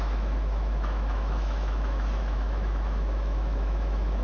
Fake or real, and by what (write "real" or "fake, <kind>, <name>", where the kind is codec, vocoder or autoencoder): fake, autoencoder, DAC-VAE